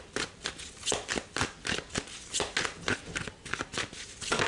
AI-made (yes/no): no